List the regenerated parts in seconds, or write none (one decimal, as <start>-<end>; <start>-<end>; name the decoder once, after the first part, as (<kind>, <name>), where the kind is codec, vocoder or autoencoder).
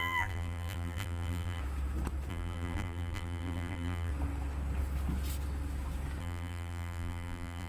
0.0-1.6 (vocoder, BigVGAN v2); 2.3-4.1; 6.2-7.7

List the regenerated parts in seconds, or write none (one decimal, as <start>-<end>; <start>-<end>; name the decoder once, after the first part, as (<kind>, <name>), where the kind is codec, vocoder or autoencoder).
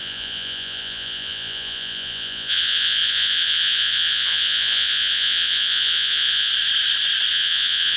0.0-6.5 (vocoder, Vocos); 7.3-8.0